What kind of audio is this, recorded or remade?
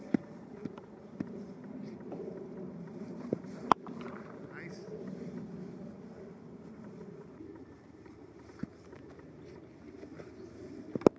recorded